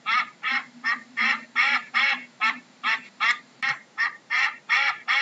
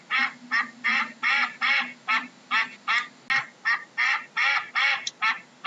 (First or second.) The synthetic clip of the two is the first